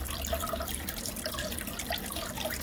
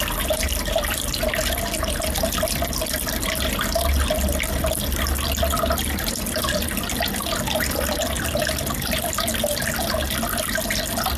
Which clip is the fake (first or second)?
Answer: first